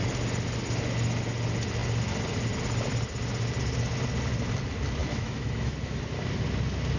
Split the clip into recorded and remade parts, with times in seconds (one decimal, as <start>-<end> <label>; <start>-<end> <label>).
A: 0.0-5.0 recorded; 5.0-6.0 remade; 6.0-7.0 recorded